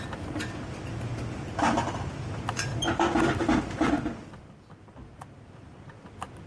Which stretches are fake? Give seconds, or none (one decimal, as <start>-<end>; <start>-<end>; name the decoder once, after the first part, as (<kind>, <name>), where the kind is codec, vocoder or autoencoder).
none